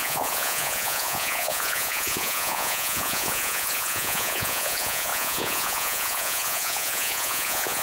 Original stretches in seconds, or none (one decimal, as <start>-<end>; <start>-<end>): none